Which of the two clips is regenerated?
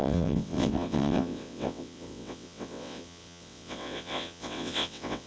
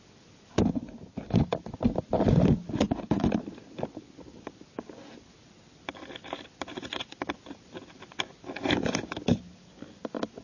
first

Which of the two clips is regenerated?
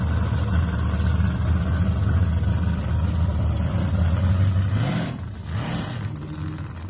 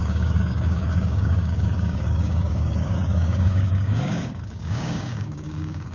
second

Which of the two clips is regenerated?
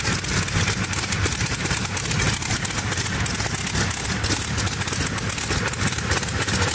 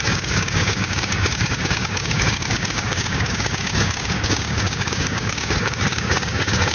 second